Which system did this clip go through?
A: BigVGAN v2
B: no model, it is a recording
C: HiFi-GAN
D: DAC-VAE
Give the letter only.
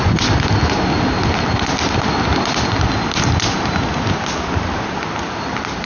B